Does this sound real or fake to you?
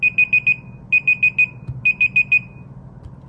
real